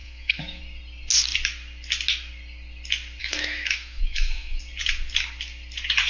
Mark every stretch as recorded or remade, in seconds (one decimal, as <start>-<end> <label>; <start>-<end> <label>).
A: 0.0-0.6 remade; 0.6-3.2 recorded; 3.2-4.6 remade; 4.6-6.1 recorded